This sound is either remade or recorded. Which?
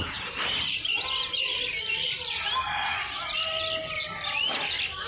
recorded